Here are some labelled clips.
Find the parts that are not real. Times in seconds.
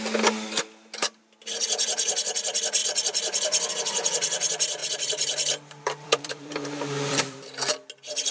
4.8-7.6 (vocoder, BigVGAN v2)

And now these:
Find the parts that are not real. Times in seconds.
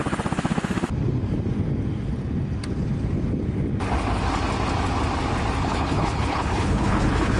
5.6-7.4 (codec, HILCodec)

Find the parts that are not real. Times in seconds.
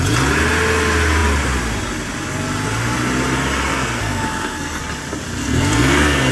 3.7-4.8 (codec, SNAC); 5.4-6.3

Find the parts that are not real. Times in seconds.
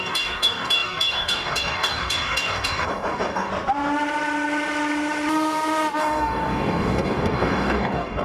0.0-3.5 (codec, DAC); 6.0-8.2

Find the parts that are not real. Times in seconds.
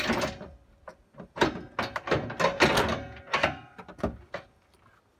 none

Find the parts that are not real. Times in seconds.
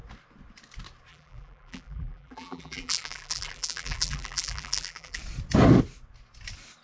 1.1-5.2 (vocoder, BigVGAN v2)